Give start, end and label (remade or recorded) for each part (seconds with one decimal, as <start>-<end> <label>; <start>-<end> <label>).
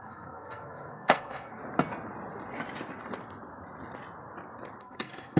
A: 0.0-1.6 remade; 1.6-4.8 recorded; 4.8-5.4 remade